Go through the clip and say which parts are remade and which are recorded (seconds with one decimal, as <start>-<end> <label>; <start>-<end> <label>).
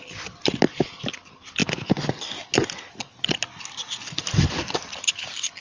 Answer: 0.0-5.6 recorded